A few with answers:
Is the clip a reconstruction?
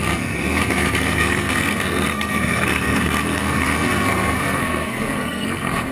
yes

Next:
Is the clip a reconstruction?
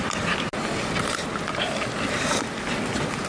no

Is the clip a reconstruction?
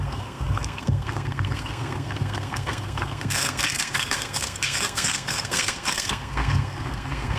yes